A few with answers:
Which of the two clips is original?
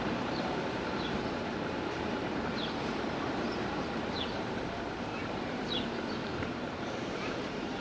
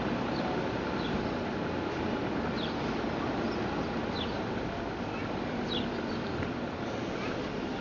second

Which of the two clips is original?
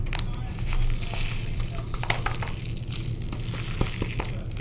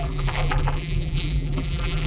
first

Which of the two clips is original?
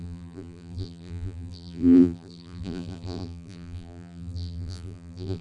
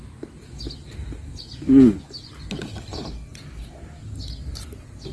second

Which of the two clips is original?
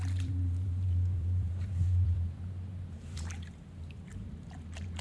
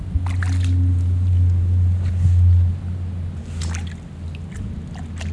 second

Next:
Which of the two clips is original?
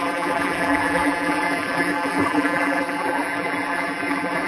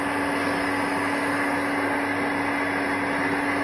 second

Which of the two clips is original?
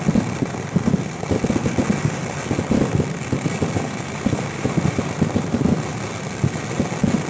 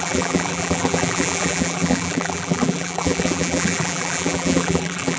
first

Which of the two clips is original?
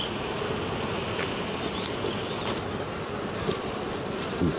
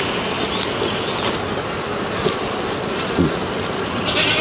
second